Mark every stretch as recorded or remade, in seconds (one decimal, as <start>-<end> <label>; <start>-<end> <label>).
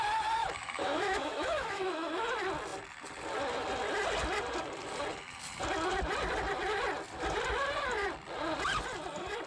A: 0.0-0.4 recorded; 0.4-2.1 remade; 2.1-9.5 recorded